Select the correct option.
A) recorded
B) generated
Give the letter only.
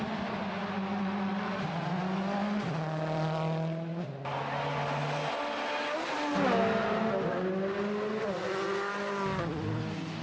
A